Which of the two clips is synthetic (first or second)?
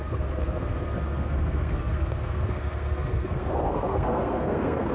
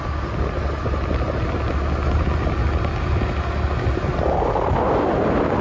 first